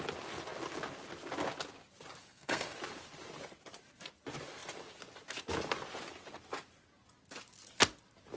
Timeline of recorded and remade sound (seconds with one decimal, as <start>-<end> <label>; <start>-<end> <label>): 0.0-2.2 recorded; 2.2-2.7 remade; 2.7-8.4 recorded